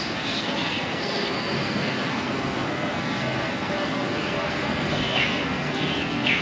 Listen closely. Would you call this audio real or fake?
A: fake